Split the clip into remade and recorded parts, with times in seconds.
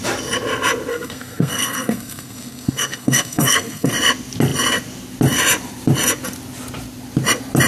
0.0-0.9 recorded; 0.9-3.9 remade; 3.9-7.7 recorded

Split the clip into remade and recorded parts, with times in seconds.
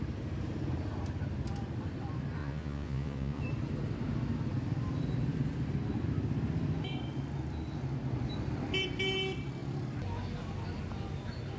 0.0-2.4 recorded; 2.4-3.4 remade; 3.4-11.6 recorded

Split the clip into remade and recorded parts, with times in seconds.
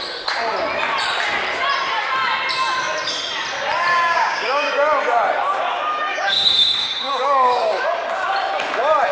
0.0-3.9 recorded; 3.9-4.7 remade; 4.7-6.1 recorded; 6.1-7.8 remade; 7.8-9.1 recorded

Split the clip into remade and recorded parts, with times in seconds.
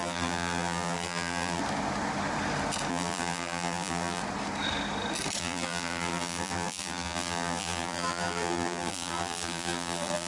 0.0-1.6 remade; 1.6-2.9 recorded; 2.9-4.2 remade; 4.2-5.4 recorded; 5.4-10.3 remade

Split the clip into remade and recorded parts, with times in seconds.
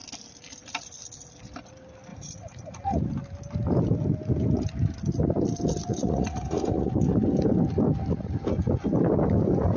0.0-2.1 recorded; 2.1-3.0 remade; 3.0-5.9 recorded; 5.9-6.9 remade; 6.9-9.8 recorded